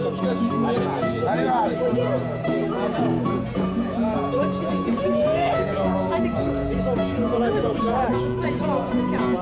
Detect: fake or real fake